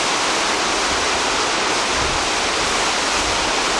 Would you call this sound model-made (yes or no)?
no